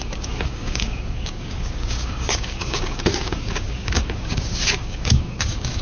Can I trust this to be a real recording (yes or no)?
no